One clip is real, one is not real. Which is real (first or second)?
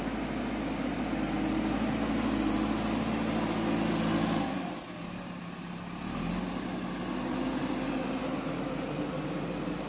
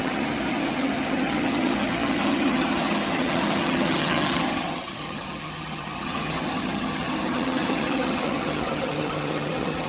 first